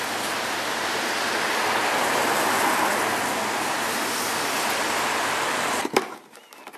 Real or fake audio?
real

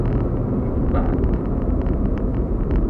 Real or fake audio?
fake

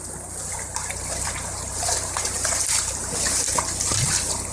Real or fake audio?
real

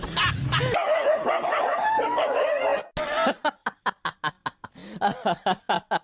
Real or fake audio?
real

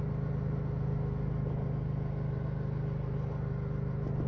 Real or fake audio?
real